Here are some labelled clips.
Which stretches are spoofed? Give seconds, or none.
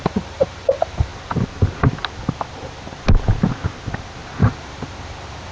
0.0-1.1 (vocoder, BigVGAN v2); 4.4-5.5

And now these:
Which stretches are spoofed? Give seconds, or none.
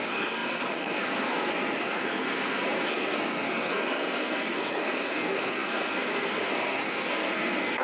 0.0-7.8 (codec, SNAC)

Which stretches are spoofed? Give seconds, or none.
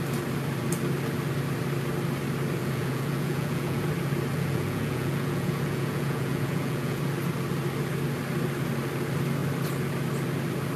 2.6-3.9 (vocoder, Vocos); 4.3-7.0